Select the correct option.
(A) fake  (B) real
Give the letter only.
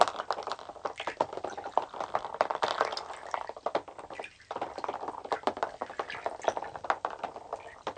B